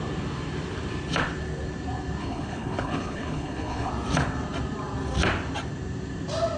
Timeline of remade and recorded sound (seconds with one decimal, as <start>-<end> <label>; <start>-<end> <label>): 0.0-2.2 recorded; 2.2-3.9 remade; 3.9-6.6 recorded